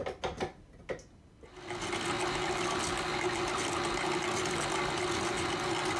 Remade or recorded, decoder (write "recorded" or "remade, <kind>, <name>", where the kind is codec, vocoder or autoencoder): recorded